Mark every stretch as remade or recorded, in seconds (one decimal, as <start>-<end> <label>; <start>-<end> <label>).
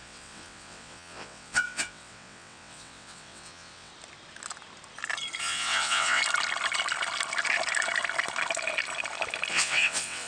0.0-3.9 remade; 3.9-5.4 recorded; 5.4-6.2 remade; 6.2-9.5 recorded; 9.5-10.3 remade